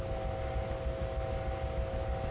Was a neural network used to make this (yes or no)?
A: no